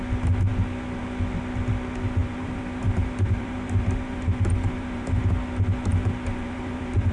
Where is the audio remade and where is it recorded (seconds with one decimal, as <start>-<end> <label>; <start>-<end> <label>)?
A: 0.0-2.2 recorded; 2.2-5.2 remade; 5.2-5.9 recorded; 5.9-7.1 remade